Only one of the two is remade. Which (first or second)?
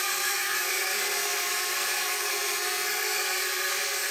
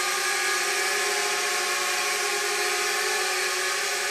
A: first